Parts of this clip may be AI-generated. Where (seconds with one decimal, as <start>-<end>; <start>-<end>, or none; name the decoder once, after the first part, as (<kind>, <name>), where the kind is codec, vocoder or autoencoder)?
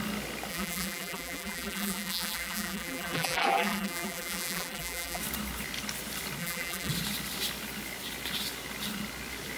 0.5-5.2 (vocoder, BigVGAN v2); 6.4-6.9